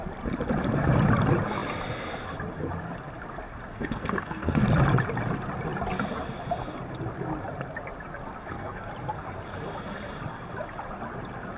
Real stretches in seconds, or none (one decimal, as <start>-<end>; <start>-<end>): 0.0-3.7; 4.6-8.4; 8.9-11.6